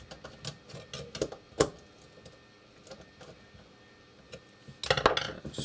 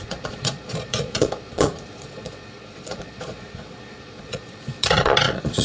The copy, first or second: second